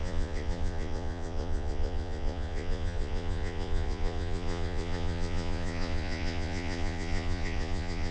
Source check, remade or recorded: remade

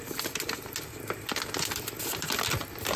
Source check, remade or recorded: recorded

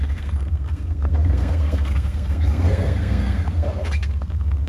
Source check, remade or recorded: remade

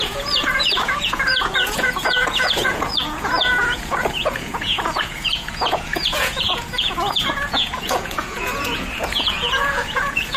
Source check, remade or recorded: remade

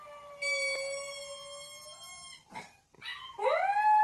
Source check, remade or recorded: recorded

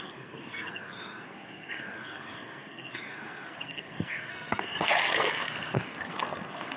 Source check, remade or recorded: remade